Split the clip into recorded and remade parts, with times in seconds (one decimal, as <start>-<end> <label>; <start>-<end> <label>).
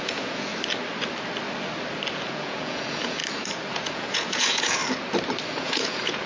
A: 0.0-0.5 remade; 0.5-2.1 recorded; 2.1-3.2 remade; 3.2-3.7 recorded; 3.7-4.8 remade; 4.8-5.5 recorded; 5.5-6.3 remade